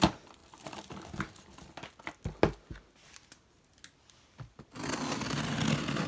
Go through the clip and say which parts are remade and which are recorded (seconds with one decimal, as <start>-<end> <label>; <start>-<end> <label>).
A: 0.0-6.1 recorded